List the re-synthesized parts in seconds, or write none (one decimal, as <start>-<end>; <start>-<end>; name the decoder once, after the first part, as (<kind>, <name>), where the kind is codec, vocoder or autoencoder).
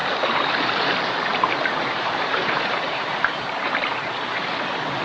1.3-4.3 (vocoder, BigVGAN v2)